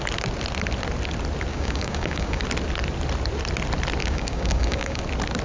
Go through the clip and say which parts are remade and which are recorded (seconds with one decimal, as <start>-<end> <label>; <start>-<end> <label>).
0.0-1.5 recorded; 1.5-2.4 remade; 2.4-4.0 recorded; 4.0-5.0 remade; 5.0-5.4 recorded